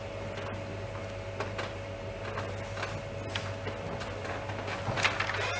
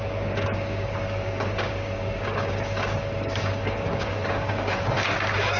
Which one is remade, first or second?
second